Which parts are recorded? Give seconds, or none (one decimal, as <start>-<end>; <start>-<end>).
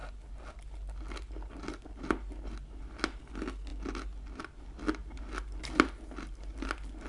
0.0-7.1